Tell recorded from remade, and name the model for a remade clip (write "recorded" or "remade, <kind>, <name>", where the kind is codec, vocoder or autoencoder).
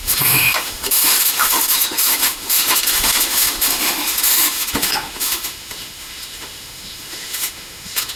remade, autoencoder, DAC-VAE